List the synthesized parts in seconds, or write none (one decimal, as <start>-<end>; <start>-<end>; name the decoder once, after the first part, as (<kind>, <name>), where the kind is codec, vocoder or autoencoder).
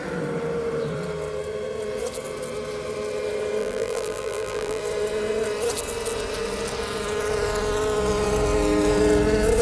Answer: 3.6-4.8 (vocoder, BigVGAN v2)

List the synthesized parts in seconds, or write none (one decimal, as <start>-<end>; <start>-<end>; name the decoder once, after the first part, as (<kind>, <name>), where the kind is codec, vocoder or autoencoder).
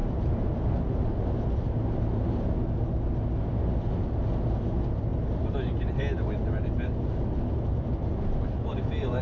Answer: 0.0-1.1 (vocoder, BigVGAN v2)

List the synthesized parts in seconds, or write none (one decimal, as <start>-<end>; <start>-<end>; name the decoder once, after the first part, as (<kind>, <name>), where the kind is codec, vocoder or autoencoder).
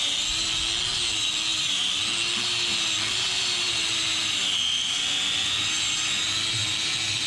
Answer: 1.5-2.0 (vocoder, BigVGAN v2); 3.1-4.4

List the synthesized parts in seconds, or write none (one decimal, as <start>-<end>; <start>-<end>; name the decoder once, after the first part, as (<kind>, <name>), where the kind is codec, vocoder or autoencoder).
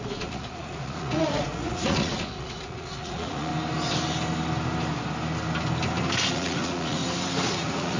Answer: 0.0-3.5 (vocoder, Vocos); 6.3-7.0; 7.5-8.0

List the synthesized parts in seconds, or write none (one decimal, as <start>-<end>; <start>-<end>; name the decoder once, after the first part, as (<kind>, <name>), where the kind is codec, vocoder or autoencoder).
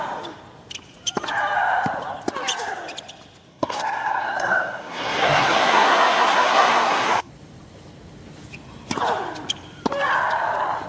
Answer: 3.5-7.3 (codec, SNAC)